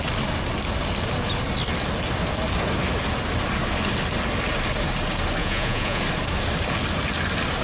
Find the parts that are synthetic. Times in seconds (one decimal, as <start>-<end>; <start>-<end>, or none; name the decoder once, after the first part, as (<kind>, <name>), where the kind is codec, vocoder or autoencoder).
5.4-6.0 (vocoder, Vocos)